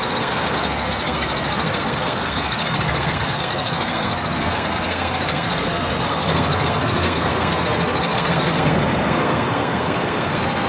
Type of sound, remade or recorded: remade